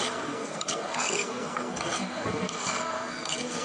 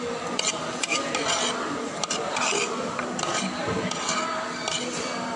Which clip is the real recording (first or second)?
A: second